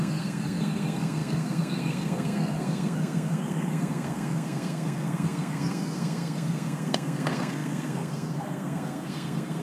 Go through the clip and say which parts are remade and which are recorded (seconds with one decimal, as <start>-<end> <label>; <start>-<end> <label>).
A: 0.0-9.6 remade